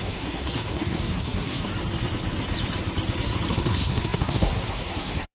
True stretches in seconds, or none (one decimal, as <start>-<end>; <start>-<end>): 1.7-3.5